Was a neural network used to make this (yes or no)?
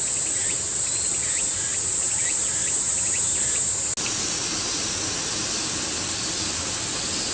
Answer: no